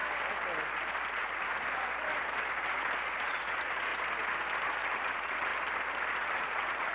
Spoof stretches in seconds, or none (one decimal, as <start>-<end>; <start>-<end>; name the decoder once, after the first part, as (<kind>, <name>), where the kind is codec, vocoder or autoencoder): 1.1-1.5 (vocoder, Vocos); 3.0-3.9; 4.8-5.5; 6.2-6.9